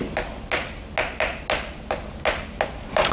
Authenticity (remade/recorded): recorded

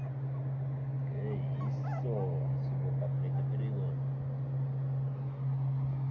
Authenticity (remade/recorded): recorded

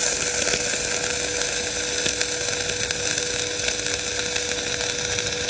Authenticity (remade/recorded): recorded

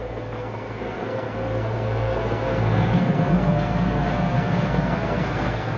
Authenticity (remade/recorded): remade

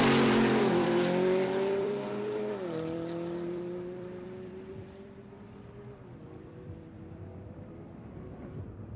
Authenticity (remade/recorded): remade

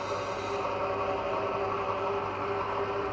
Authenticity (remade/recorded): recorded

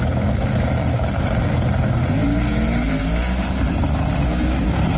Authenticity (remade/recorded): recorded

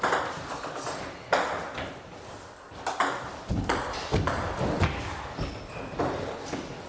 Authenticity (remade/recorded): recorded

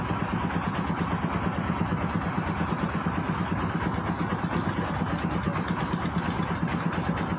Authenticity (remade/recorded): recorded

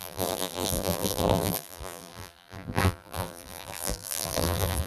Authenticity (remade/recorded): remade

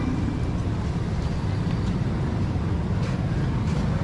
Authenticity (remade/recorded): recorded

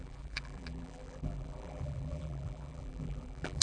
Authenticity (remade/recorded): remade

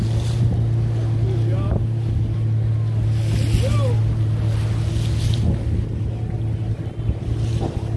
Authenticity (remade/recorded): recorded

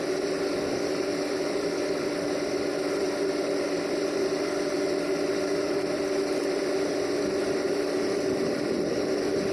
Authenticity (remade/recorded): recorded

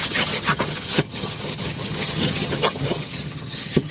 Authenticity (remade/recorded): remade